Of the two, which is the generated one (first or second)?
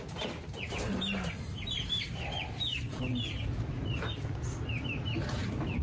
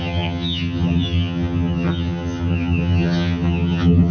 second